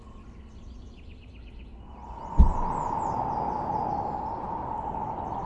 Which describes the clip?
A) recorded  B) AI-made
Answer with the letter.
A